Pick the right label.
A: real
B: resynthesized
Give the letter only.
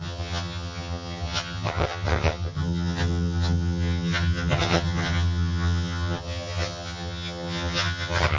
B